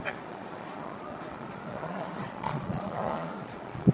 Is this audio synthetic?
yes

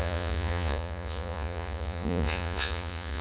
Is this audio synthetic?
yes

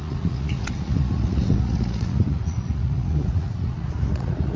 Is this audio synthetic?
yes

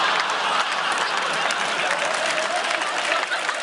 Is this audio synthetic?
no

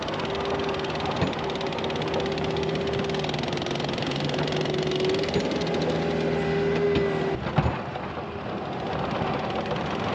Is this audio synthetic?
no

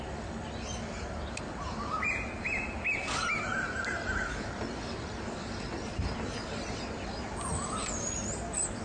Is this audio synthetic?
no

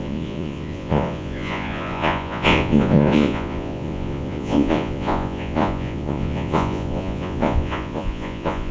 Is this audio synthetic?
yes